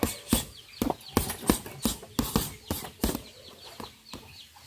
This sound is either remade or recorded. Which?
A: recorded